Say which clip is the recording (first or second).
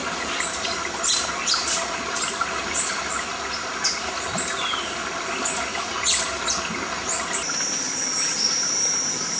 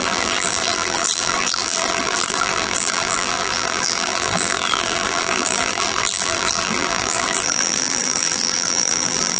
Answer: first